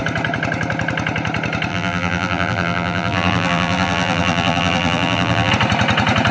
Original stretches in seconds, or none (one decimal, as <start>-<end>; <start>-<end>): 0.0-1.7; 5.5-6.3